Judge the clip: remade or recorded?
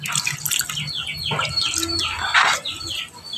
recorded